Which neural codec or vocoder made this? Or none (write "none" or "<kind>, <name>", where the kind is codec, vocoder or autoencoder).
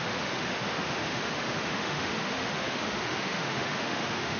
autoencoder, DAC-VAE